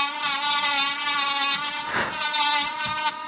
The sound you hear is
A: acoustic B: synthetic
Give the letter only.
A